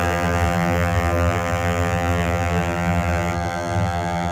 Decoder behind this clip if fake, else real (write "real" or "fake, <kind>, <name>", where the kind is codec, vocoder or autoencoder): fake, vocoder, BigVGAN v2